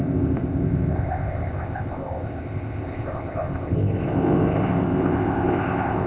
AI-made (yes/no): yes